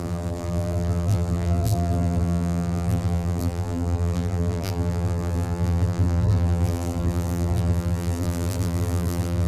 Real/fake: fake